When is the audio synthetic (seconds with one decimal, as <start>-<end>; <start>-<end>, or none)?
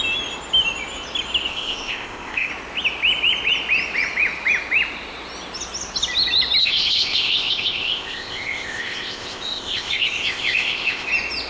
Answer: 1.5-2.5; 6.6-11.1